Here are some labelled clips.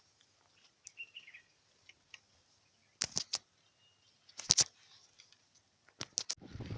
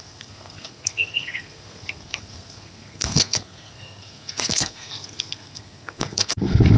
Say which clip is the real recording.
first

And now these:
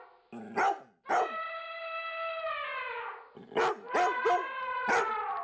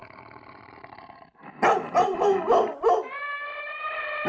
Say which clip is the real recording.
first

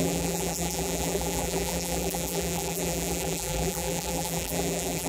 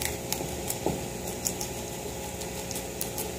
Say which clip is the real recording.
second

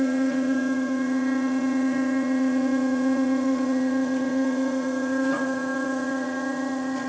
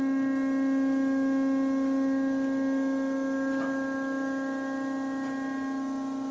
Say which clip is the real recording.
second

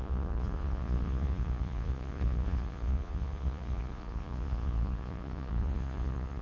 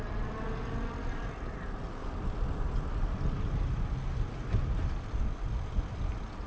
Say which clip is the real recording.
second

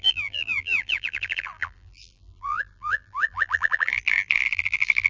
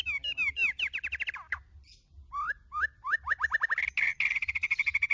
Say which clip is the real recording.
second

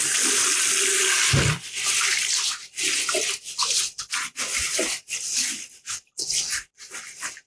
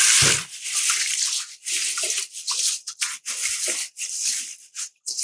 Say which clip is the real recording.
first